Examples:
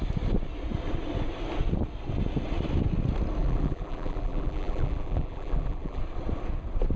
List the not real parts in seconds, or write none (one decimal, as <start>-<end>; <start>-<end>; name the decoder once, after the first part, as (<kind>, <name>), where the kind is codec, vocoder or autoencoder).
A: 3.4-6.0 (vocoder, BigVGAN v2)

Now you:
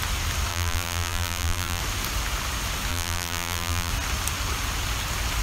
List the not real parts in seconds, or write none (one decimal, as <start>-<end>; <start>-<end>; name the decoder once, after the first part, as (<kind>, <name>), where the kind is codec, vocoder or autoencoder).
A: 0.5-1.8 (vocoder, BigVGAN v2); 2.9-3.9

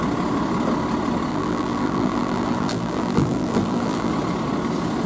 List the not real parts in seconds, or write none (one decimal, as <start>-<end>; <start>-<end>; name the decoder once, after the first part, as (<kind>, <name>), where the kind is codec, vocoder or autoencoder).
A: 1.3-4.1 (vocoder, BigVGAN v2)

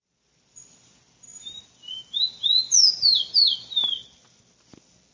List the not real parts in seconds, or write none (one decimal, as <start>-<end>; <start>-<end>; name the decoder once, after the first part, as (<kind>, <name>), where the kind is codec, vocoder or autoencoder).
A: none

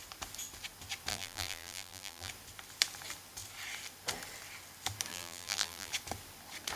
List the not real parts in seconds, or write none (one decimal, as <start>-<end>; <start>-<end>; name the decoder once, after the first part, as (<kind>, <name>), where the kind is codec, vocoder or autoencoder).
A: 1.1-2.3 (vocoder, BigVGAN v2); 5.1-5.9